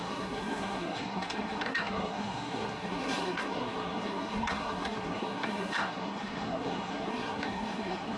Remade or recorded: remade